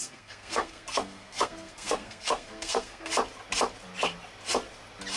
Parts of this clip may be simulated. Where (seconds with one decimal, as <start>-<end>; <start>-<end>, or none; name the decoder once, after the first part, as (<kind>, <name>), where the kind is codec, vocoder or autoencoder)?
0.0-3.1 (codec, SNAC)